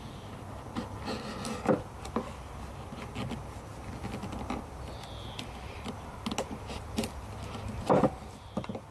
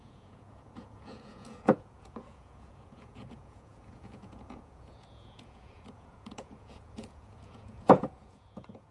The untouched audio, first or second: first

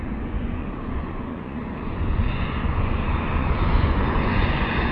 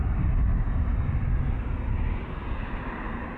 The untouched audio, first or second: second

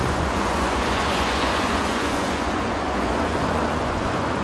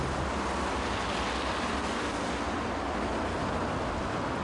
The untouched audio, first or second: second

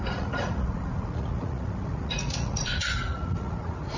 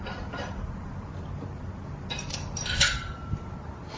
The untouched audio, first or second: second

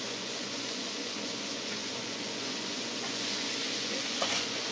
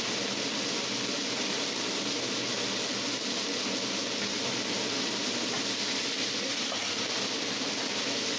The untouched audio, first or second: second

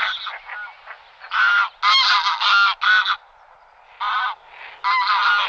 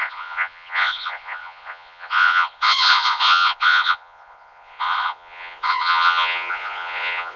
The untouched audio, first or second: first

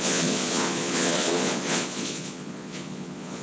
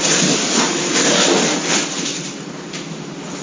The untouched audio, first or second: second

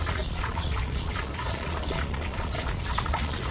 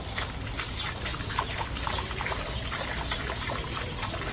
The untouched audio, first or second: second